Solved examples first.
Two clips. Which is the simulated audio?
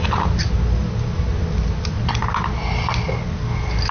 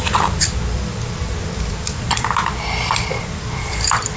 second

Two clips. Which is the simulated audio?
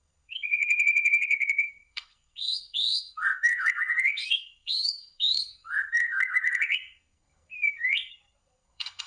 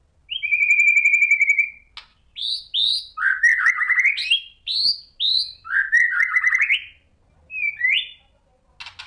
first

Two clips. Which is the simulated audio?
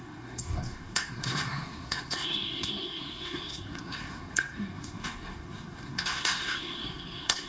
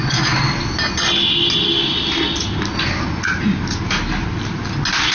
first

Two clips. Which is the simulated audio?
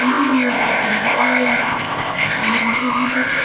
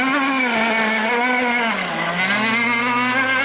first